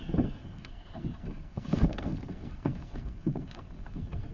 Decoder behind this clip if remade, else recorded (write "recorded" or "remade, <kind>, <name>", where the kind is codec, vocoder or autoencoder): remade, codec, SNAC